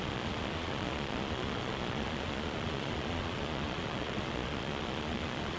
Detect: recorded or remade remade